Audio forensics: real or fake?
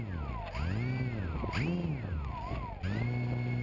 real